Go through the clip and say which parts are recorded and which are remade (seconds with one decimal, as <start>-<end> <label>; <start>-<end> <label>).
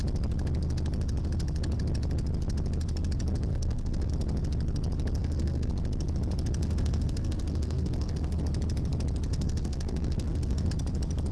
0.0-3.5 recorded; 3.5-4.1 remade; 4.1-5.2 recorded; 5.2-5.7 remade; 5.7-6.6 recorded; 6.6-8.4 remade; 8.4-9.3 recorded; 9.3-10.7 remade; 10.7-11.3 recorded